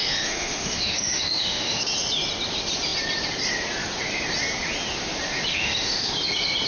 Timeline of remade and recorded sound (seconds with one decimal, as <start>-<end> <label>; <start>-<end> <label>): 0.0-1.8 remade; 1.8-5.5 recorded; 5.5-6.1 remade; 6.1-6.7 recorded